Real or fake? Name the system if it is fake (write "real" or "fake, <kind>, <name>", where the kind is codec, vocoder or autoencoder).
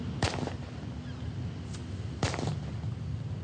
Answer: real